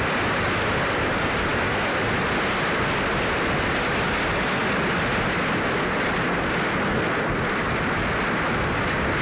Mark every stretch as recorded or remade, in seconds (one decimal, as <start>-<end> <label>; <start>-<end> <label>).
0.0-9.2 recorded